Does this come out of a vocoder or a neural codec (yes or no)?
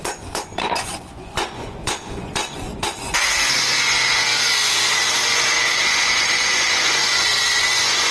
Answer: yes